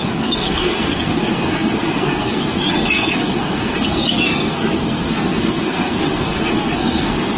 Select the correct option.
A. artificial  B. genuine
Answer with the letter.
A